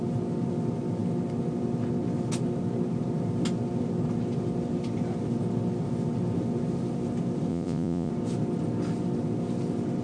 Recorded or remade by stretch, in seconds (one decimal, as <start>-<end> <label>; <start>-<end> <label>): 0.0-7.5 recorded; 7.5-8.1 remade; 8.1-10.0 recorded